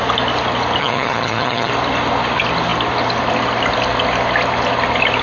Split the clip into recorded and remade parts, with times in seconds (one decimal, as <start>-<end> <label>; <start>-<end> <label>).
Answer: 0.0-0.8 recorded; 0.8-1.7 remade; 1.7-5.2 recorded